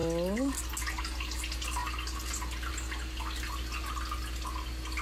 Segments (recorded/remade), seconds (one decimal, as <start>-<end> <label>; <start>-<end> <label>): 0.0-5.0 recorded